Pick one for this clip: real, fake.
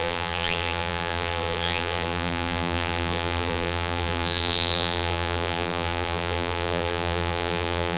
fake